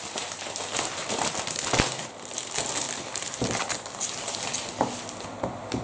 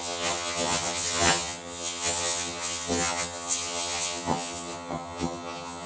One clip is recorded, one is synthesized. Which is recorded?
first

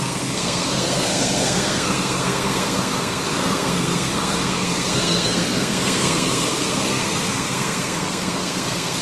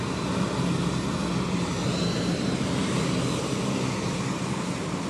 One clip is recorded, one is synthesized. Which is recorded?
second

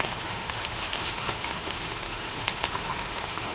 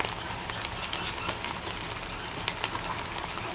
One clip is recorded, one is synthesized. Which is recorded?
second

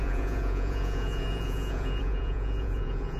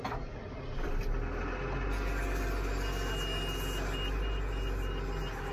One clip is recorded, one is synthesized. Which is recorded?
second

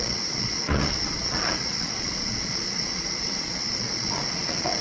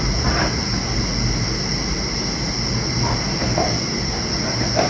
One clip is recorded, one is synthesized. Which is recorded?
second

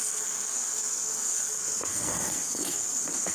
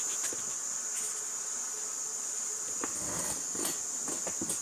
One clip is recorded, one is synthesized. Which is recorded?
second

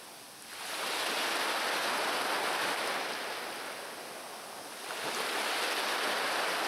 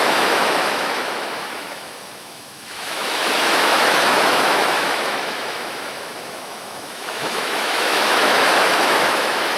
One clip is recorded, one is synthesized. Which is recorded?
first